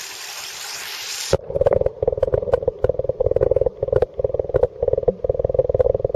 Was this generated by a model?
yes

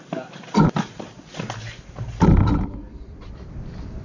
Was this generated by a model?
yes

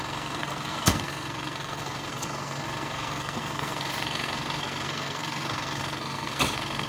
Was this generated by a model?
yes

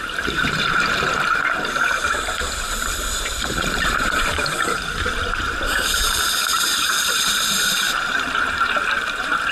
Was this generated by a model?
yes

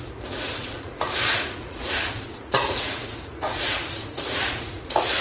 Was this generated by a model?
yes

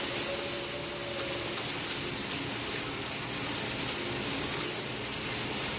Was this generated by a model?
no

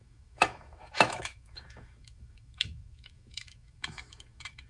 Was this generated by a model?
yes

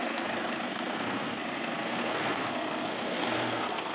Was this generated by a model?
yes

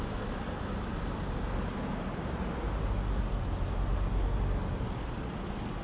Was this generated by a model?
no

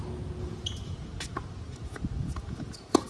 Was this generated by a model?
no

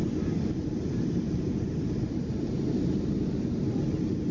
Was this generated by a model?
no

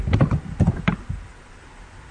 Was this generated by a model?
no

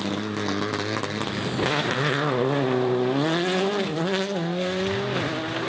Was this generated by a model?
no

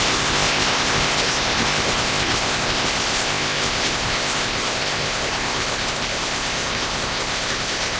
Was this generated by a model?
yes